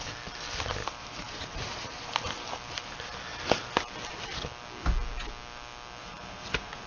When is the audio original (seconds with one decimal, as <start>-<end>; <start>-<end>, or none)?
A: 0.0-0.8; 2.1-6.0